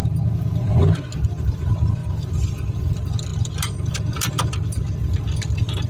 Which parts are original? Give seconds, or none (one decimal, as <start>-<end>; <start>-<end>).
0.0-5.9